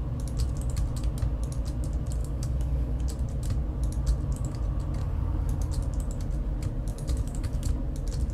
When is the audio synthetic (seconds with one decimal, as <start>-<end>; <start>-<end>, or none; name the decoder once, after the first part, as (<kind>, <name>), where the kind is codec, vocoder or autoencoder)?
2.2-3.0 (codec, DAC); 5.0-5.7; 6.9-7.7